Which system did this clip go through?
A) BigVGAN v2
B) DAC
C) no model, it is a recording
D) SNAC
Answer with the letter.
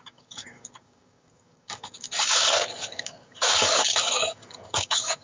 B